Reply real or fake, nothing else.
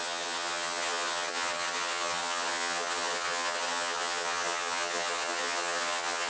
fake